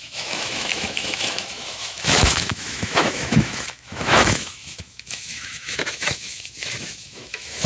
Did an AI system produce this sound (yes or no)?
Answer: yes